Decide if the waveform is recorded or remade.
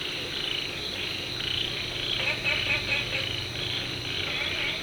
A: recorded